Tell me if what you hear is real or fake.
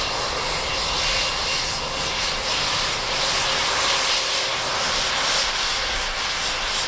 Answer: real